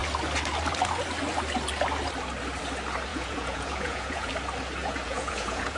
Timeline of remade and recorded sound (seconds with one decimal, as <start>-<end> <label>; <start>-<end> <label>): 0.0-3.1 recorded; 3.1-4.3 remade; 4.3-4.8 recorded; 4.8-5.8 remade